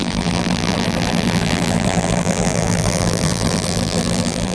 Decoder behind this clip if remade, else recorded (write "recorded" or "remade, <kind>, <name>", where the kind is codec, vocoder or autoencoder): remade, vocoder, BigVGAN v2